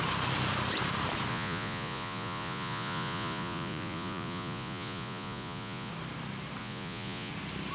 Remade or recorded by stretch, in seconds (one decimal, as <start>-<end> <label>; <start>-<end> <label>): 0.0-1.3 recorded; 1.3-5.9 remade; 5.9-6.6 recorded; 6.6-7.3 remade; 7.3-7.7 recorded